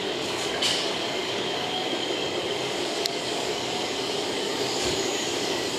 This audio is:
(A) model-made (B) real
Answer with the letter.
A